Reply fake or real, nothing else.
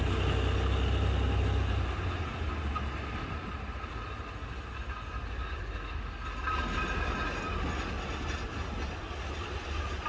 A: real